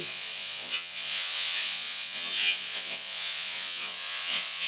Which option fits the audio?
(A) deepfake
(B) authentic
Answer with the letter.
A